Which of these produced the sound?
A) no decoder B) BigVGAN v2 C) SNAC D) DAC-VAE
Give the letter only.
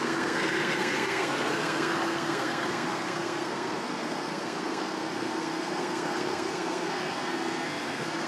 C